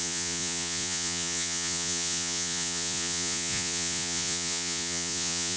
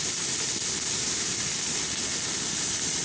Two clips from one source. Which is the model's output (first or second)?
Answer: first